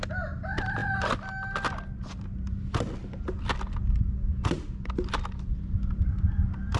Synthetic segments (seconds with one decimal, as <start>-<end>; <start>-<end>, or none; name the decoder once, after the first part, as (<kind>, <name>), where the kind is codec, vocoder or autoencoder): none